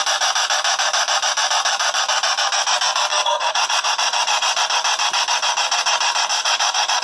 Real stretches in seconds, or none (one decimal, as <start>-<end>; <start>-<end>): 0.0-3.1; 4.6-6.3

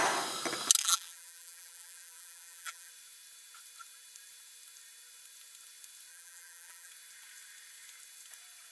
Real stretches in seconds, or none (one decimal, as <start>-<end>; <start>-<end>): 0.0-0.8; 2.9-6.1; 6.9-8.7

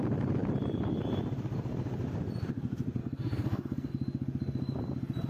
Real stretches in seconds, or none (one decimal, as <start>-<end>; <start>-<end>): 0.0-3.0; 3.9-5.3

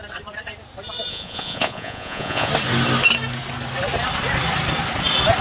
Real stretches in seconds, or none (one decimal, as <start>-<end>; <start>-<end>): 0.0-1.1; 2.5-5.4

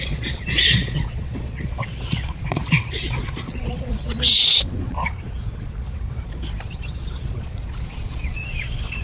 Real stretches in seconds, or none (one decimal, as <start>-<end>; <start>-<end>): none

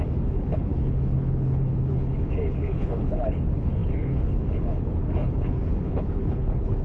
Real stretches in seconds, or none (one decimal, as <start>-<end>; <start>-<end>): none

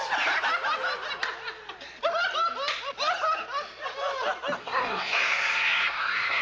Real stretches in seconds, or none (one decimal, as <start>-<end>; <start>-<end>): 0.0-4.6